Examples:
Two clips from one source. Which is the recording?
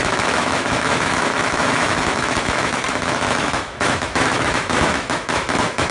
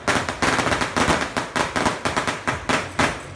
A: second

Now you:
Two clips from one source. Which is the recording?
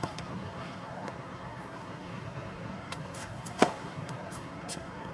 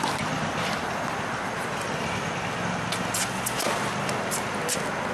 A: second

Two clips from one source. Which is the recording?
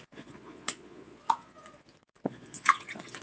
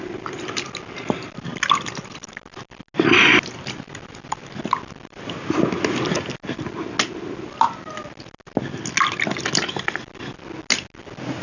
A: second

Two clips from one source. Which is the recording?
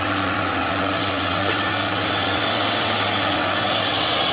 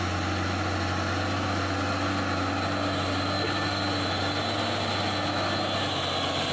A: second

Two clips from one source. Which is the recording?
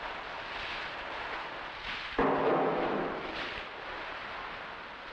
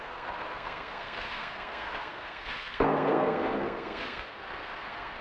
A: first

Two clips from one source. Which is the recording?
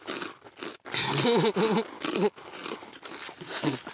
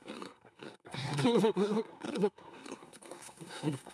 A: first